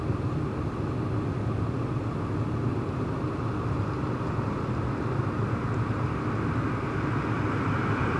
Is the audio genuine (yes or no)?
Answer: yes